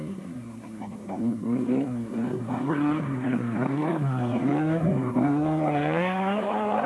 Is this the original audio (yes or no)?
no